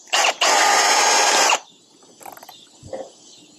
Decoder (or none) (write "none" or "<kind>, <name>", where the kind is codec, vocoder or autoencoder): none